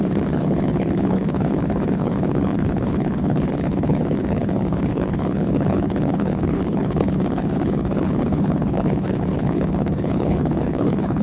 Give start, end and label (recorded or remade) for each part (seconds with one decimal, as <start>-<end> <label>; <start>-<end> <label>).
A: 0.0-11.2 remade